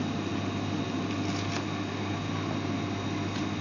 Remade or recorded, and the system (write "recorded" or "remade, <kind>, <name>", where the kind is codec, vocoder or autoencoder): recorded